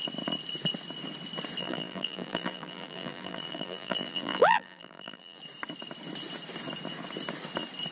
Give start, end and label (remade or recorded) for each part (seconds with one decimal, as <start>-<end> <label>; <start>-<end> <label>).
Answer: 0.0-1.6 recorded; 1.6-5.4 remade; 5.4-7.9 recorded